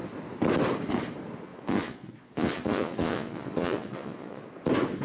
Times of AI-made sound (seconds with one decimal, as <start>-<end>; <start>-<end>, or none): 1.5-4.5